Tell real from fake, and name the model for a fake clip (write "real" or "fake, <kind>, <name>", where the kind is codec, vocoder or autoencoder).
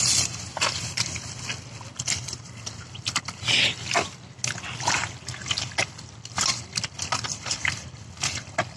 real